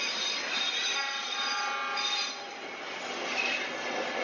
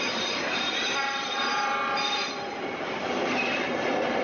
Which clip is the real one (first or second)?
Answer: first